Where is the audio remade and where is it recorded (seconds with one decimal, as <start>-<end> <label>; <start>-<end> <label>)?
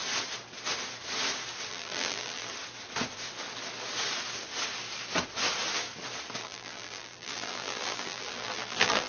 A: 0.0-1.7 recorded; 1.7-2.5 remade; 2.5-6.4 recorded; 6.4-9.1 remade